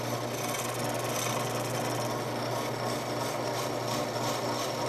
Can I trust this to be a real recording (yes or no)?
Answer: yes